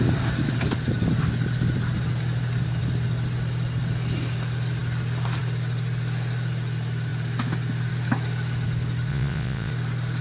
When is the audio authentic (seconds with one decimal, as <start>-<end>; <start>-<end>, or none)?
0.0-9.1; 9.7-10.2